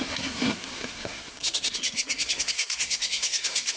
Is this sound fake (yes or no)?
yes